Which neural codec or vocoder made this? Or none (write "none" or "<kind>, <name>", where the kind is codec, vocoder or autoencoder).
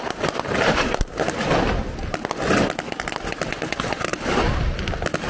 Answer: none